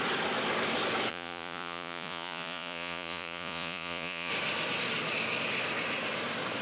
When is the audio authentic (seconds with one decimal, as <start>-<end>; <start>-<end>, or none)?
0.0-1.1; 4.3-6.6